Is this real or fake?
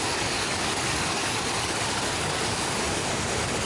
fake